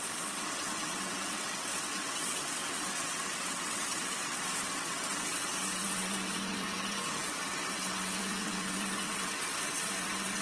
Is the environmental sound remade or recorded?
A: remade